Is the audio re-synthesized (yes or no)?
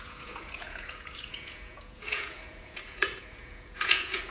yes